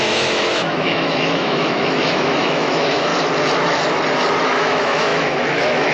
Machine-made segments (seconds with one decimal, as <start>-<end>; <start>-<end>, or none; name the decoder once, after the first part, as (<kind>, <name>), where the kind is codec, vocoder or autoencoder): 0.0-3.1 (autoencoder, DAC-VAE); 4.4-5.9